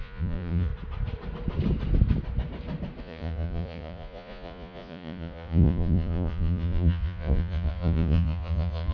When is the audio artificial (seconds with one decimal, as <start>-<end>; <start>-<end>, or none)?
0.0-0.7; 3.0-8.9